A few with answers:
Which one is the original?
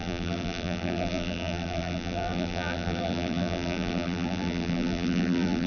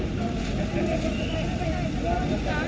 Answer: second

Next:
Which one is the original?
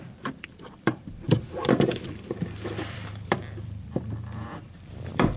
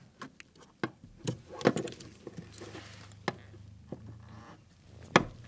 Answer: second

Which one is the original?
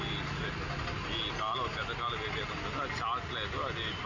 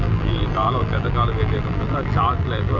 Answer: first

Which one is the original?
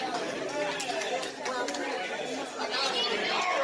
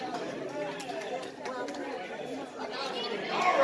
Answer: first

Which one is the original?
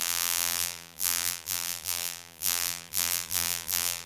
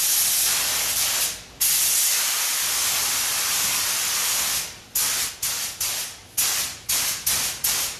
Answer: second